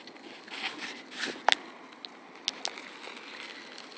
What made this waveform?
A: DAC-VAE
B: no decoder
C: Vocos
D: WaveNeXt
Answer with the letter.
B